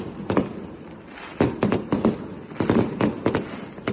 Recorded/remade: recorded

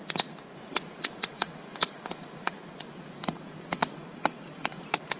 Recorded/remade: remade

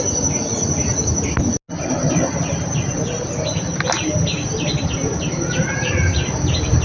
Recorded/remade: recorded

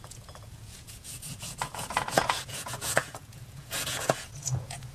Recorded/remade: remade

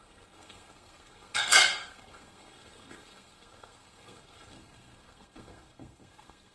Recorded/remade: remade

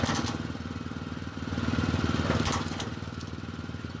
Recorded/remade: recorded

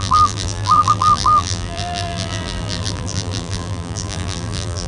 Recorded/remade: remade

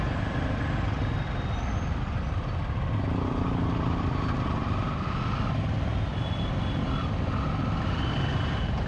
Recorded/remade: recorded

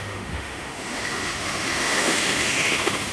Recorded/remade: remade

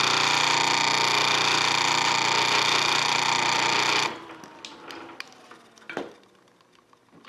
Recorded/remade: recorded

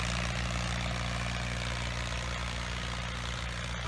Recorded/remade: recorded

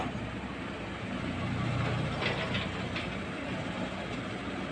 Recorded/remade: recorded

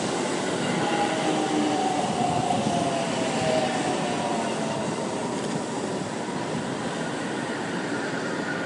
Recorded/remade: recorded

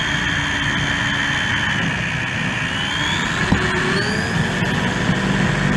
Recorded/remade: recorded